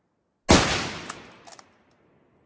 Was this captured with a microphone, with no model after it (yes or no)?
yes